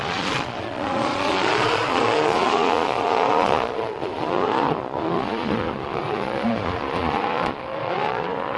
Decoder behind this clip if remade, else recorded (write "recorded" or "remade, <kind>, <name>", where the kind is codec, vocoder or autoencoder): remade, vocoder, Vocos